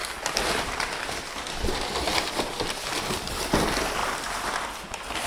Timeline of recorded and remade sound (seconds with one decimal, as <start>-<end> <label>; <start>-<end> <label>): 0.0-4.0 recorded; 4.0-4.6 remade; 4.6-5.3 recorded